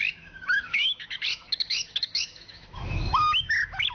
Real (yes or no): no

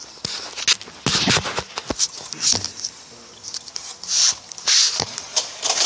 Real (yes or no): yes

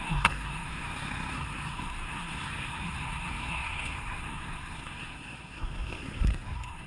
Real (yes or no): no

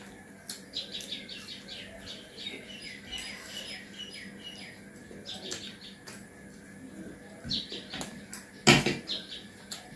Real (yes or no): yes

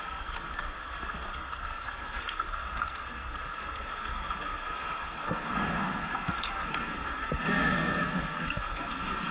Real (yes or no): no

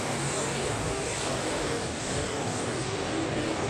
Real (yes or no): no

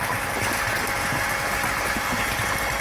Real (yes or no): yes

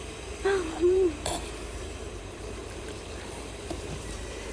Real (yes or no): no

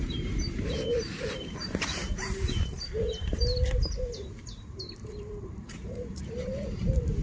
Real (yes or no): no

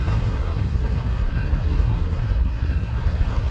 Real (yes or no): no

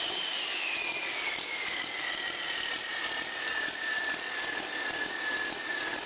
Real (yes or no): yes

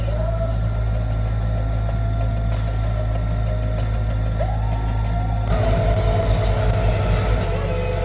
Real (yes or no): yes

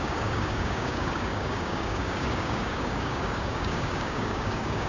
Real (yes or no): no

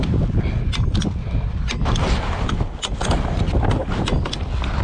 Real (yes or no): yes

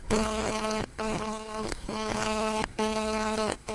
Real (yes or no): no